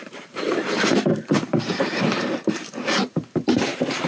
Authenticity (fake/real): fake